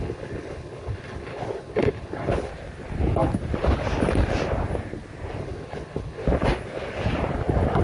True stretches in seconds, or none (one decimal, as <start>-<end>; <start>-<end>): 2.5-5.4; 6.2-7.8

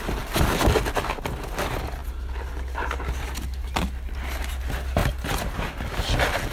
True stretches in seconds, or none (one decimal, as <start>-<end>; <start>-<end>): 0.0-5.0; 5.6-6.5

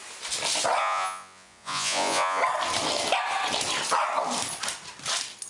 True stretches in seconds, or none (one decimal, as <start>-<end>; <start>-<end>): 0.0-0.8; 2.4-5.5

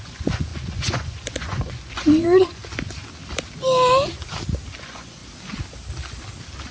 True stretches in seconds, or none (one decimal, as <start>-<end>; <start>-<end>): 2.6-4.8; 5.2-6.7